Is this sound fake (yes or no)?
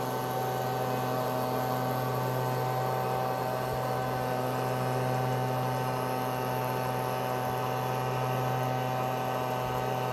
no